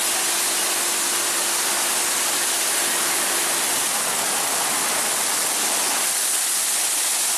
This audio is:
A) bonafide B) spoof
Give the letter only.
A